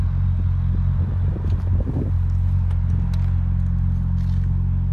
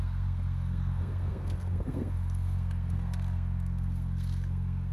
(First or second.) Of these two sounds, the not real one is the second